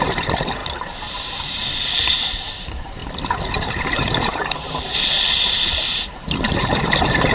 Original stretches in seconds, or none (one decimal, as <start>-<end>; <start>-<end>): 3.0-3.5; 4.9-5.5